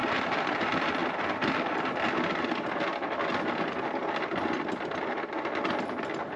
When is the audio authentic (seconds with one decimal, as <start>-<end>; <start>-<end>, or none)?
0.0-6.4

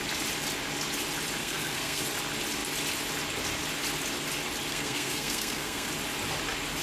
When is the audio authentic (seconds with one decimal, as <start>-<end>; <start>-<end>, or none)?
0.0-1.4; 2.0-4.7; 5.9-6.8

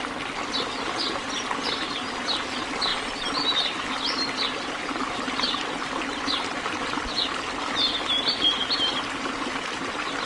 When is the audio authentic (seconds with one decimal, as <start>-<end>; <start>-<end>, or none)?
0.0-10.3